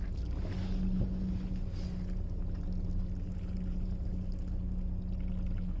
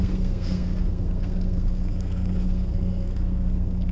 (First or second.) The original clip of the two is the first